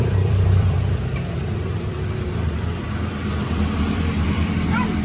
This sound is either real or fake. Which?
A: fake